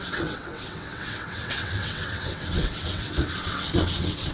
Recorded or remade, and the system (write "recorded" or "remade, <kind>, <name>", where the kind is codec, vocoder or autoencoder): remade, vocoder, WaveNeXt